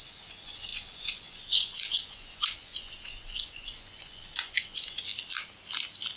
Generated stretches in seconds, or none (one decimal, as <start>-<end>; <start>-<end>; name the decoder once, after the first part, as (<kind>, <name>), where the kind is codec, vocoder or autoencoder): 0.0-5.1 (vocoder, Vocos)